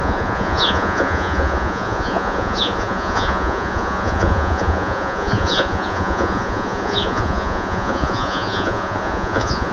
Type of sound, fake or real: fake